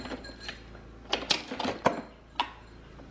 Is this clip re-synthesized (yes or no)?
no